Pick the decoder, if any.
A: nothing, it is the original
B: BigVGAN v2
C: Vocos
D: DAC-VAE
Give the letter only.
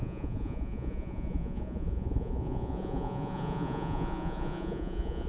C